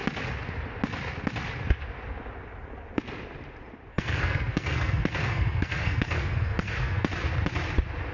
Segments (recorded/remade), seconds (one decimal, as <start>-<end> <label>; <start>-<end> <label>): 0.0-3.9 recorded; 3.9-7.1 remade; 7.1-8.1 recorded